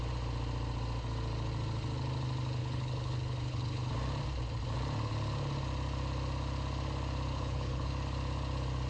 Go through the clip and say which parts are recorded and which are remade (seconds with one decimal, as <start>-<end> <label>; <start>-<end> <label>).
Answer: 0.0-2.6 recorded; 2.6-3.9 remade; 3.9-7.3 recorded; 7.3-7.9 remade; 7.9-8.9 recorded